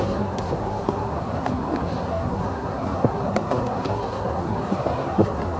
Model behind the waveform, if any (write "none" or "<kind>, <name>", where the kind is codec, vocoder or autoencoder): codec, SNAC